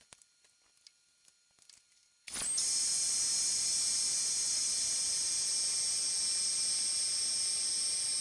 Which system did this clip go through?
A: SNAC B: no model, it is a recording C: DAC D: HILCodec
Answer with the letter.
B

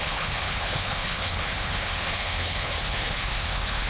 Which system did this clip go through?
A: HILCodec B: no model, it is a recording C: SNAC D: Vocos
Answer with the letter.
A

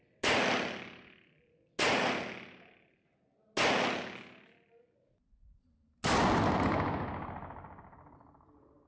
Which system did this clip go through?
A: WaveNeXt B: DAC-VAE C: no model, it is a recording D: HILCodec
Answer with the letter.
C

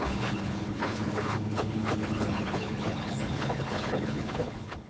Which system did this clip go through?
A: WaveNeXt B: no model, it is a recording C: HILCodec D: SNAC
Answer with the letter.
C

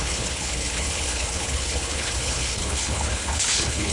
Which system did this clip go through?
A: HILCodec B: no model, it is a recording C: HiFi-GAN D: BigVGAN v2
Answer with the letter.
A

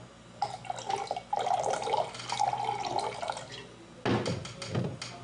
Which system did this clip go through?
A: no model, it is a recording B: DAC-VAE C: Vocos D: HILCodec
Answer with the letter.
A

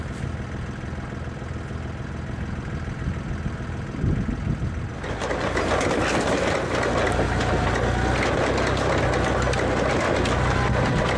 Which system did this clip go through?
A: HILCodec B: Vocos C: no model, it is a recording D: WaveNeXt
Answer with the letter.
C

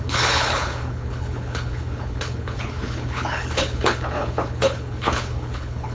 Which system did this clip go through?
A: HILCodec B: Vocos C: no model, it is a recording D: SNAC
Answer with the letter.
A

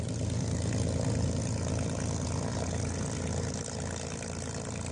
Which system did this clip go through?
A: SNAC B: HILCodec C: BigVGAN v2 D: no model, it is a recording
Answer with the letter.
D